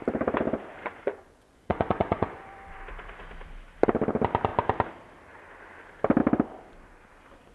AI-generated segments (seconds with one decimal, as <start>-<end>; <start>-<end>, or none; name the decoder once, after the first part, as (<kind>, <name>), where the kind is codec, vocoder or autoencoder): 0.8-2.8 (vocoder, Vocos)